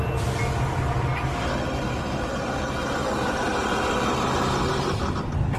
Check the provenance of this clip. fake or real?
real